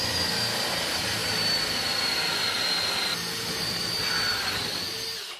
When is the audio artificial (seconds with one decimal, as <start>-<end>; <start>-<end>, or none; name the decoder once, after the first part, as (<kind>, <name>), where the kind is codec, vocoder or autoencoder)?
none